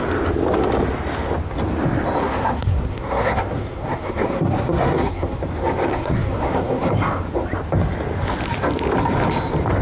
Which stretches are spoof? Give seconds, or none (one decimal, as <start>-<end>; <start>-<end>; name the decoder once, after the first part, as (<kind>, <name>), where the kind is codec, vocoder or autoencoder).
2.2-5.4 (codec, SNAC); 5.9-6.9

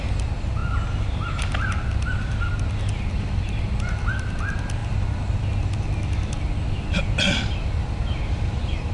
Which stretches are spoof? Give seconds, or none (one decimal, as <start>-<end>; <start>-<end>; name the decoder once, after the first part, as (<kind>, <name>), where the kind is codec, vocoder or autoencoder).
none

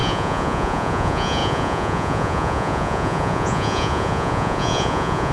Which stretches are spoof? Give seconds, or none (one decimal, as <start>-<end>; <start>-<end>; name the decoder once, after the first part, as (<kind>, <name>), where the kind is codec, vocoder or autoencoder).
0.0-5.3 (vocoder, Vocos)

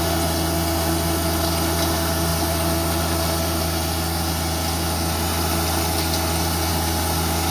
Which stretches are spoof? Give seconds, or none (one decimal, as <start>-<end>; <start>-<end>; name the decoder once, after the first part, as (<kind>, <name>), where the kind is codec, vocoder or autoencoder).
none

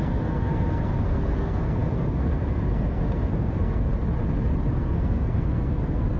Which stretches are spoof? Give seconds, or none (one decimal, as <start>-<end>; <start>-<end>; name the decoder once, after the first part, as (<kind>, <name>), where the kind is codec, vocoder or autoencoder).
0.0-3.9 (codec, SNAC); 4.7-6.2

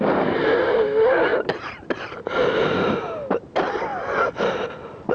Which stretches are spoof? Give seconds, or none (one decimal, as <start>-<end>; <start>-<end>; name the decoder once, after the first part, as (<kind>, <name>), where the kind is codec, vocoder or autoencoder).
1.3-2.3 (vocoder, BigVGAN v2)